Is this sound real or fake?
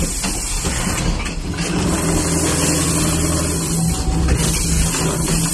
real